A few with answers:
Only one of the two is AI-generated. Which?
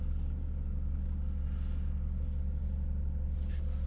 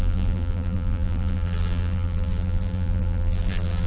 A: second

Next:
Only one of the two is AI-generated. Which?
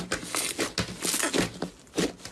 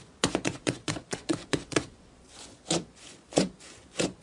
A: second